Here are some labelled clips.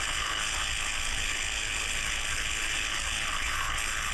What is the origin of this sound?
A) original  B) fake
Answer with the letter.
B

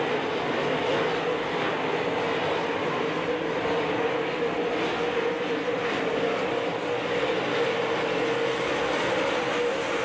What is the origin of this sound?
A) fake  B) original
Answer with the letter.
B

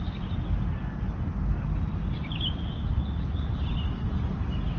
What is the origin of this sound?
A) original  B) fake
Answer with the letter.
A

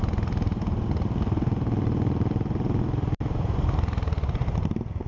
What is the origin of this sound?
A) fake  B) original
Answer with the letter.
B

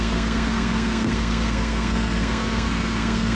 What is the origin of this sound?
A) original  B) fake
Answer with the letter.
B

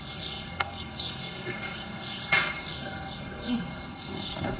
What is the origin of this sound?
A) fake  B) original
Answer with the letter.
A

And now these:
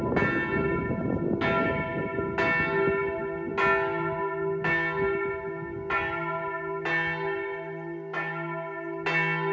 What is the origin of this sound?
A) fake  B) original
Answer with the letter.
B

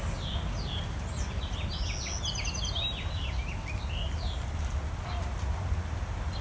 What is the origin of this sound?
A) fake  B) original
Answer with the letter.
B